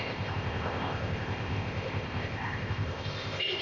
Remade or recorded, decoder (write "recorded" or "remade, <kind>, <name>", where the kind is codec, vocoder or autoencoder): remade, codec, ZipCodec